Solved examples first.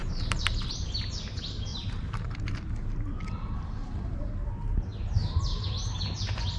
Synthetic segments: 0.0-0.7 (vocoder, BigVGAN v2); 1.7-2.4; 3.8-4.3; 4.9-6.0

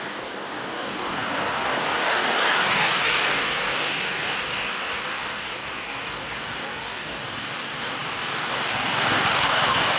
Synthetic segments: 0.0-10.0 (codec, DAC)

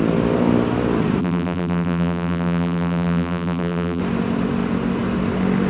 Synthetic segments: 1.2-4.0 (vocoder, BigVGAN v2)